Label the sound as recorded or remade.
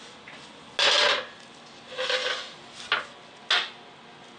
recorded